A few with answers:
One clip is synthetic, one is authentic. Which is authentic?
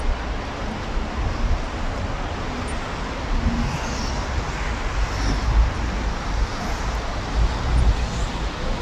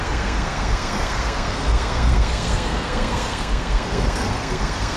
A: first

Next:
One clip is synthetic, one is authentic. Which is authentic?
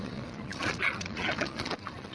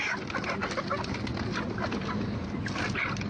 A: second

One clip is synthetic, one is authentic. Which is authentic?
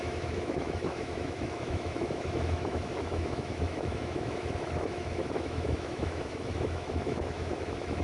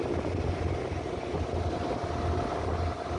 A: second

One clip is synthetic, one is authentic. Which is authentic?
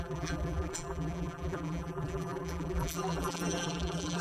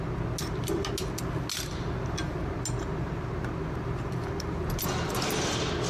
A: second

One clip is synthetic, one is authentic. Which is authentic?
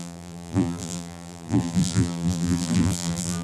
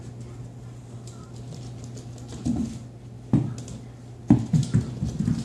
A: second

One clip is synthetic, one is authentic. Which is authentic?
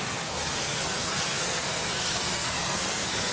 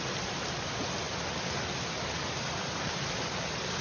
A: second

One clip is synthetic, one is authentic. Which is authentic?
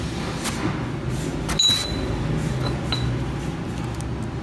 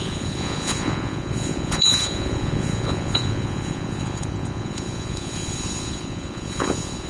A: first